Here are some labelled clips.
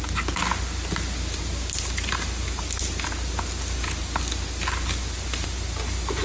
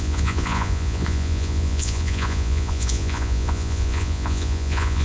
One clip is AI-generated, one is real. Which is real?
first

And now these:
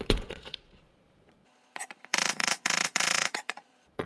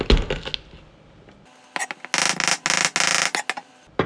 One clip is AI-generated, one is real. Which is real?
second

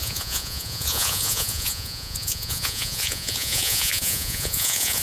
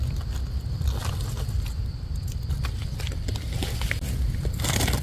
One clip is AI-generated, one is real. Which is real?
second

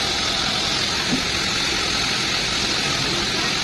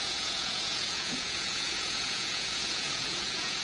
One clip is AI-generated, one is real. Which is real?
first